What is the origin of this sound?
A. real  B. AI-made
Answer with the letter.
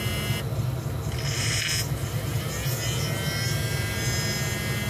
A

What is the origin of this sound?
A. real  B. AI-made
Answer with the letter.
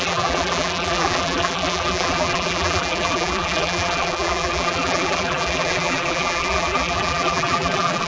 B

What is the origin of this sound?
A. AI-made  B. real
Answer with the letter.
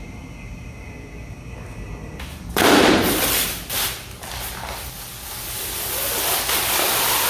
B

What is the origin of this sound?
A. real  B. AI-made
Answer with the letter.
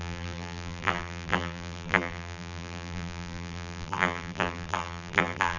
B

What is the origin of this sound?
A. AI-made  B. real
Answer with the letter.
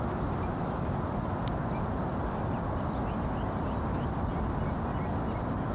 B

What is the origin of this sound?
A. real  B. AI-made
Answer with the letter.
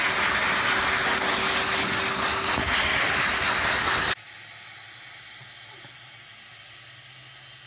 A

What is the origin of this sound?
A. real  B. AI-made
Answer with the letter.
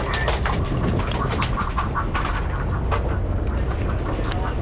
A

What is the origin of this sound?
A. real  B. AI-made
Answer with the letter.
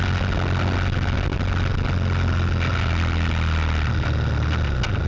A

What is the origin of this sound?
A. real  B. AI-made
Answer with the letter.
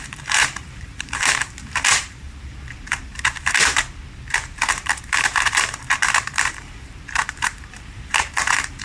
B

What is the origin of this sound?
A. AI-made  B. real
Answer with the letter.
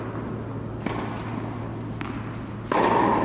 B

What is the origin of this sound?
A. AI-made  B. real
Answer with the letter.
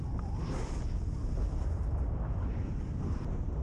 B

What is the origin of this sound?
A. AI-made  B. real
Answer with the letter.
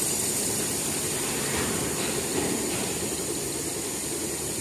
B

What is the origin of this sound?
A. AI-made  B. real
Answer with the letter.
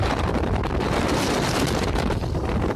A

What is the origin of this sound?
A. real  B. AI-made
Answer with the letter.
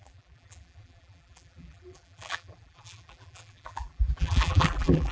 B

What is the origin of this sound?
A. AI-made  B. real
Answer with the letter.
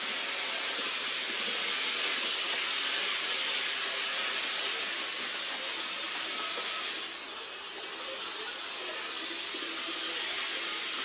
B